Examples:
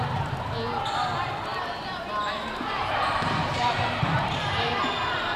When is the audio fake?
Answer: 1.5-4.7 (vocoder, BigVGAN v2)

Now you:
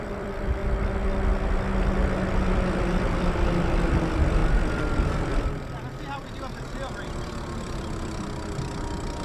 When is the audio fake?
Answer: 0.0-0.6 (vocoder, BigVGAN v2); 2.8-4.4; 5.3-9.2

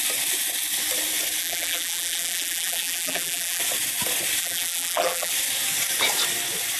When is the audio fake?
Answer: 1.4-3.6 (vocoder, BigVGAN v2); 4.4-5.3

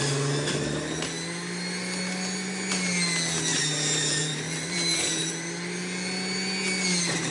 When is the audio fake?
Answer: 3.5-5.3 (vocoder, BigVGAN v2)

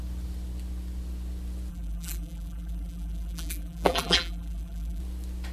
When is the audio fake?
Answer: 1.7-5.0 (vocoder, BigVGAN v2)

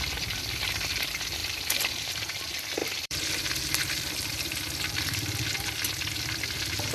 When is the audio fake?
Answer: 1.4-2.4 (vocoder, BigVGAN v2); 2.8-5.4